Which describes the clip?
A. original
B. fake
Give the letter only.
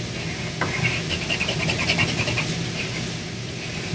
A